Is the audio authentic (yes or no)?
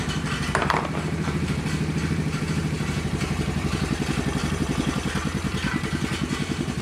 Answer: no